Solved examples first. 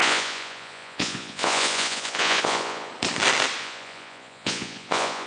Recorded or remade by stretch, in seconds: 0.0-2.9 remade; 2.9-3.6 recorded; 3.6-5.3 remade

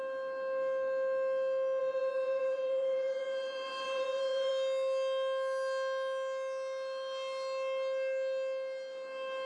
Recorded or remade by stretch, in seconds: 0.0-1.8 recorded; 1.8-4.5 remade; 4.5-9.5 recorded

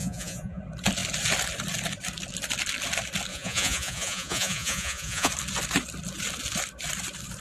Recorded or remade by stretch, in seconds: 0.0-0.6 remade; 0.6-3.3 recorded; 3.3-5.3 remade; 5.3-7.4 recorded

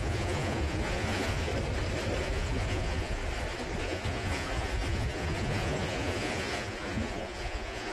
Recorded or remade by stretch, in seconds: 0.0-1.5 remade; 1.5-2.2 recorded; 2.2-3.2 remade; 3.2-3.8 recorded; 3.8-7.9 remade

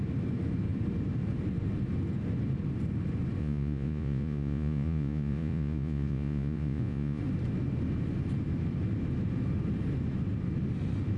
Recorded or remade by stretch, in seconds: 0.0-3.4 recorded; 3.4-7.2 remade; 7.2-11.2 recorded

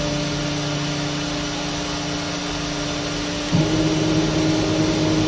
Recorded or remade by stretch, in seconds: 0.0-5.3 recorded

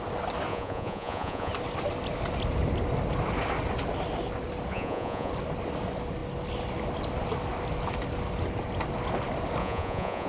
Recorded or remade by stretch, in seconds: 0.0-0.5 recorded; 0.5-1.5 remade; 1.5-4.7 recorded; 4.7-5.3 remade; 5.3-9.6 recorded; 9.6-10.3 remade